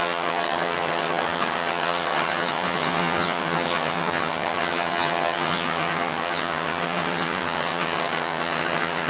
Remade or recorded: remade